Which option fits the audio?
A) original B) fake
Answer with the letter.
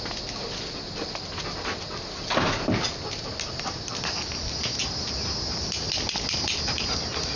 A